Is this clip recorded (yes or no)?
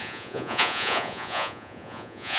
no